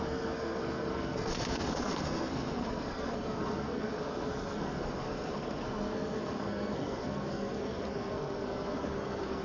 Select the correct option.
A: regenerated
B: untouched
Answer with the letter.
A